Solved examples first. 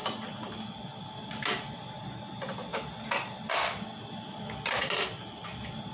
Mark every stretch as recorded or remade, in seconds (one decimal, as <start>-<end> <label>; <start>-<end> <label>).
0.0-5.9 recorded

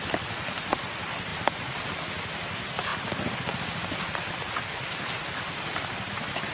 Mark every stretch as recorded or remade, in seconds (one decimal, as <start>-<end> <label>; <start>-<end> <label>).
0.0-6.5 recorded

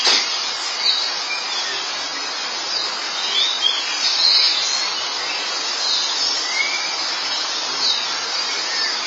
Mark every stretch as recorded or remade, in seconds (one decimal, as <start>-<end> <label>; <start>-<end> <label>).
0.0-9.1 recorded